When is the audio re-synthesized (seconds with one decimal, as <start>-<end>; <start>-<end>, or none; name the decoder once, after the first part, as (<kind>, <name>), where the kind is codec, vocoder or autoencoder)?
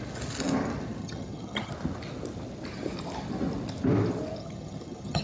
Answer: 1.0-1.7 (vocoder, HiFi-GAN); 4.4-5.2